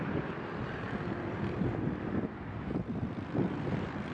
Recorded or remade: remade